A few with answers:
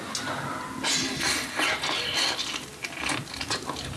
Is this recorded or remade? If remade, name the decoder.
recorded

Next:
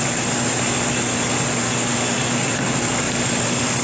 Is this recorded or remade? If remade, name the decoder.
recorded